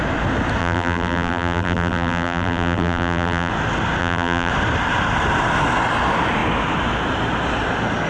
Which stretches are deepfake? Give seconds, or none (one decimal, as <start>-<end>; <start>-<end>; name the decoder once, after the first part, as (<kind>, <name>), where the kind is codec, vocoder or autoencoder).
0.6-3.5 (vocoder, BigVGAN v2); 4.0-4.5